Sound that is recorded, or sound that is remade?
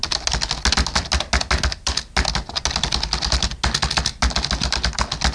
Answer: recorded